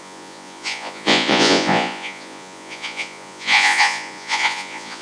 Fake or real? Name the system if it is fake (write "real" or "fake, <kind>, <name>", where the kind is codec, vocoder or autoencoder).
fake, vocoder, Vocos